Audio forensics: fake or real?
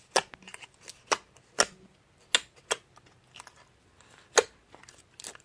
real